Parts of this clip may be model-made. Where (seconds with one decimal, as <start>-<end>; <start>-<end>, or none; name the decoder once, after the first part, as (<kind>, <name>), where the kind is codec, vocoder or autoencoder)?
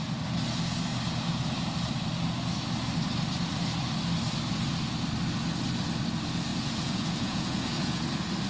6.5-8.0 (vocoder, Vocos)